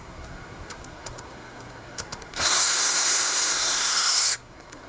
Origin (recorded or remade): remade